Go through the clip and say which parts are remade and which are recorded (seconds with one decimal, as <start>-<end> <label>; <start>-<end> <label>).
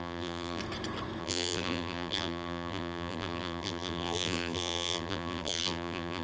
0.0-0.6 remade; 0.6-1.2 recorded; 1.2-6.2 remade